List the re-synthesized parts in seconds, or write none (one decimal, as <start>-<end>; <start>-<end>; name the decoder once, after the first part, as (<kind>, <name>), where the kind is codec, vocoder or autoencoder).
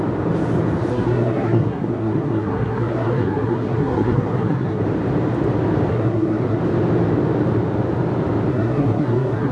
0.9-4.8 (codec, SNAC); 5.9-6.6; 8.5-9.5